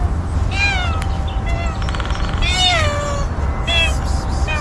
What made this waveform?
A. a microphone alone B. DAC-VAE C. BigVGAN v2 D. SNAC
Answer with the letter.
A